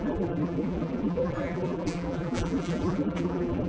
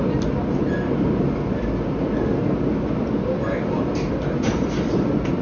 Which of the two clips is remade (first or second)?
first